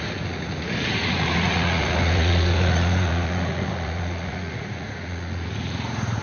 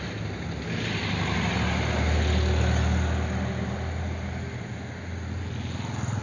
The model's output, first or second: first